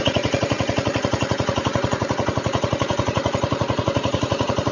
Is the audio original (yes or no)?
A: no